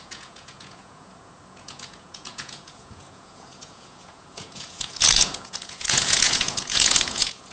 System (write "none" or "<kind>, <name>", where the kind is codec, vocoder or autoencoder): vocoder, Vocos